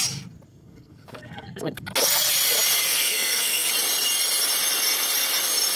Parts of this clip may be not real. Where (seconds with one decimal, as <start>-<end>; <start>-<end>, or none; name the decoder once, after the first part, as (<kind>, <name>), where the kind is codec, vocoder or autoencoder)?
0.5-1.8 (codec, SNAC); 2.9-3.7